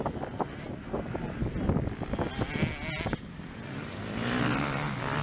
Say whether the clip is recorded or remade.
recorded